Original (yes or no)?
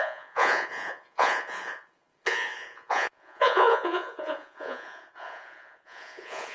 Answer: no